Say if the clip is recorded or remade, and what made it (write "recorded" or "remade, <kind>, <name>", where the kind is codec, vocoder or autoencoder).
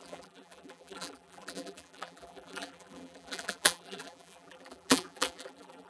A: remade, vocoder, BigVGAN v2